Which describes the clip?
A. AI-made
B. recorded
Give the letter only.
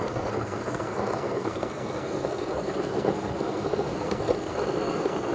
A